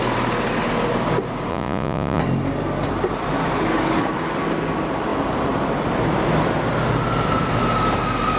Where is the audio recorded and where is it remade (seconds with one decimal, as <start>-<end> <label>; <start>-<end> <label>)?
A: 0.0-1.5 recorded; 1.5-2.2 remade; 2.2-8.4 recorded